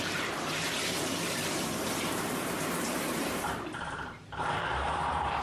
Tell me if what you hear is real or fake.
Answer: fake